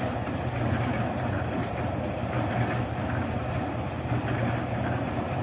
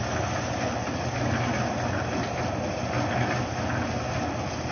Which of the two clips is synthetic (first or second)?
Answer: first